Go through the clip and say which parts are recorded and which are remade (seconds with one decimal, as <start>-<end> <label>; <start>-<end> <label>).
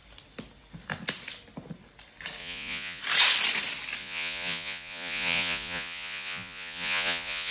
0.0-2.4 recorded; 2.4-3.0 remade; 3.0-4.0 recorded; 4.0-7.5 remade